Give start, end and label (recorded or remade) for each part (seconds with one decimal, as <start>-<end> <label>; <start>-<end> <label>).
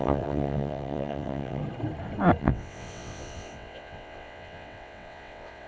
0.0-1.6 remade; 1.6-2.4 recorded; 2.4-5.7 remade